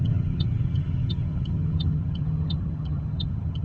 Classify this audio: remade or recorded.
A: remade